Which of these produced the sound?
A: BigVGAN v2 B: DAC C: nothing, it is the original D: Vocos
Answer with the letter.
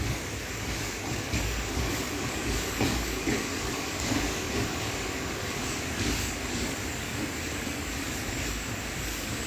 B